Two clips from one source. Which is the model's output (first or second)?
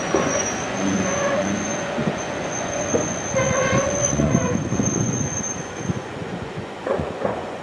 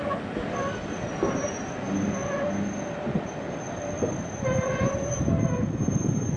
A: first